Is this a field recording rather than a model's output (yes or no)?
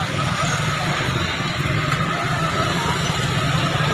yes